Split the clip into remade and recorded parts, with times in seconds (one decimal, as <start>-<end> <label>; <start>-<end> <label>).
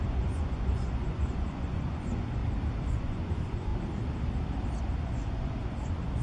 0.0-2.4 remade; 2.4-2.9 recorded; 2.9-3.7 remade; 3.7-4.8 recorded; 4.8-6.2 remade